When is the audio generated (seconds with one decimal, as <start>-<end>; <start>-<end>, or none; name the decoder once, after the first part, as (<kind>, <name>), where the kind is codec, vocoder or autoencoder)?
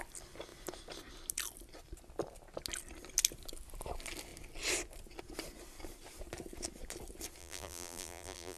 7.4-8.6 (vocoder, BigVGAN v2)